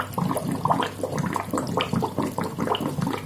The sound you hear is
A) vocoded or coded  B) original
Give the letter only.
B